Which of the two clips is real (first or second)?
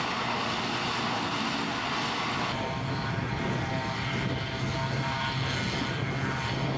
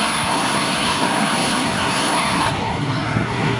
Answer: first